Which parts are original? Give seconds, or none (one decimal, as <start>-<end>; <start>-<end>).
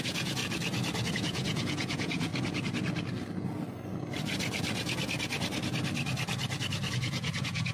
0.4-1.1; 2.3-6.9